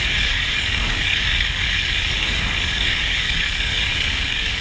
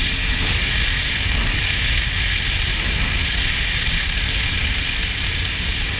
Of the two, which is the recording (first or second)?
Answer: second